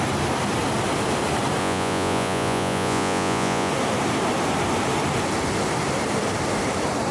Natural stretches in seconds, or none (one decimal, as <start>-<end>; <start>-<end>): 0.0-1.6; 3.7-7.1